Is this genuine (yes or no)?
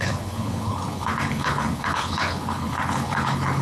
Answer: no